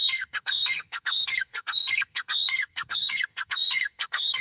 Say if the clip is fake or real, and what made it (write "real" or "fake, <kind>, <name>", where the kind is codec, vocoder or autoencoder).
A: fake, codec, SNAC